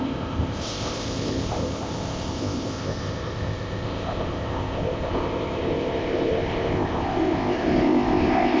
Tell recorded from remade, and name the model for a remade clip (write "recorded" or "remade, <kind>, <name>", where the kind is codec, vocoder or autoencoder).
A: remade, codec, ZipCodec